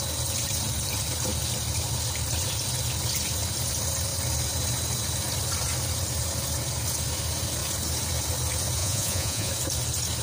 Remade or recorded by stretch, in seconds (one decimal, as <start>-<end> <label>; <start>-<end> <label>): 0.0-8.8 recorded; 8.8-9.5 remade; 9.5-10.2 recorded